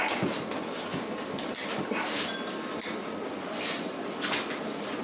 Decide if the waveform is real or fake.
real